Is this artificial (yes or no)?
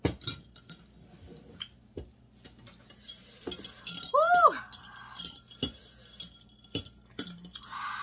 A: no